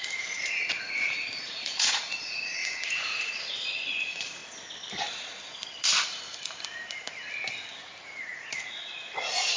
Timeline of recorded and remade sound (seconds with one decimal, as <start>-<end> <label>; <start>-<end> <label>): 0.0-4.4 remade; 4.4-8.0 recorded; 8.0-9.6 remade